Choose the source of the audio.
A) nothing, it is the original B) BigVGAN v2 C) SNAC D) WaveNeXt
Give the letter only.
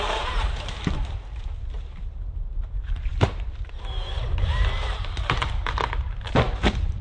B